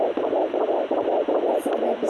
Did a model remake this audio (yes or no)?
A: no